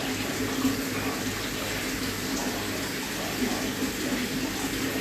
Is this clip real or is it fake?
real